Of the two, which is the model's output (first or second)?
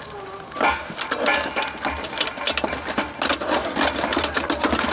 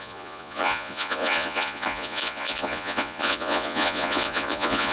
second